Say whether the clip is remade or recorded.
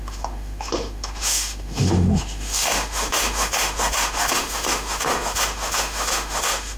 remade